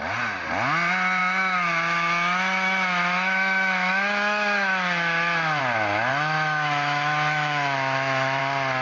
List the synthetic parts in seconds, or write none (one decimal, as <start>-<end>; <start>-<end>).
1.2-5.6; 6.1-8.4